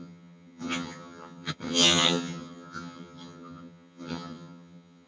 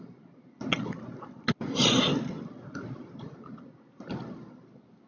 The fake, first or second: first